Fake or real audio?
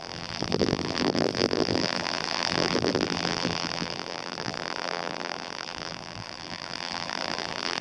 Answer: fake